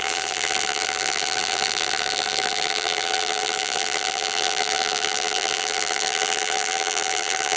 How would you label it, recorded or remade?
remade